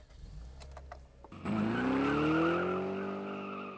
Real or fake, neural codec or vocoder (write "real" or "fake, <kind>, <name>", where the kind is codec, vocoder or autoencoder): real